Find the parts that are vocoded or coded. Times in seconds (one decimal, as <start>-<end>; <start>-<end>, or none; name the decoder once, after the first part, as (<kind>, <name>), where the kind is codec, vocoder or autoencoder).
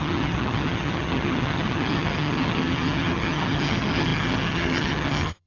0.0-5.5 (vocoder, HiFi-GAN)